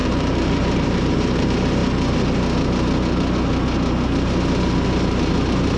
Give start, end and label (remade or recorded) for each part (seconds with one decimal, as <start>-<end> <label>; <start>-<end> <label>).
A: 0.0-1.8 remade; 1.8-5.1 recorded; 5.1-5.8 remade